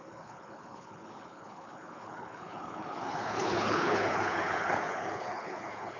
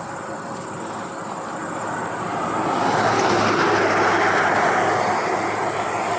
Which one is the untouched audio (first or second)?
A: second